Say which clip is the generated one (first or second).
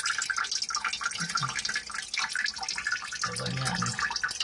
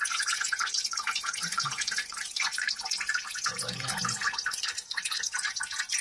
second